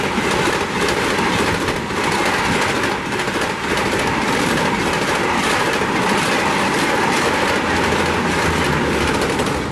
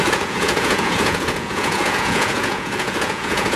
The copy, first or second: second